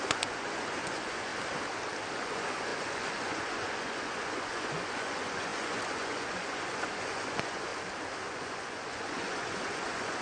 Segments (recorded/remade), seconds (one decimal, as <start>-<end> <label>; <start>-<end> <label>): 0.0-1.3 remade; 1.3-2.1 recorded; 2.1-7.7 remade; 7.7-8.2 recorded; 8.2-10.2 remade